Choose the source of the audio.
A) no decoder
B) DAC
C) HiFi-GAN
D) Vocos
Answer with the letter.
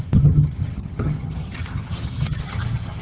C